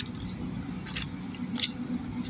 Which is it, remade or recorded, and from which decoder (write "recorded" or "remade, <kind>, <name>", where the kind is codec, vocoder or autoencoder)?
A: recorded